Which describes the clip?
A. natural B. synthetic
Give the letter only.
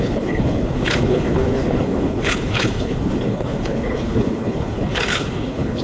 B